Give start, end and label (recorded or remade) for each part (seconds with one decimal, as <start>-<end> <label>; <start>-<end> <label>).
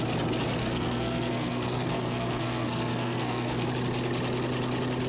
0.0-0.6 recorded; 0.6-3.7 remade; 3.7-5.1 recorded